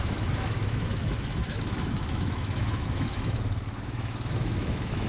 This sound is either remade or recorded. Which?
remade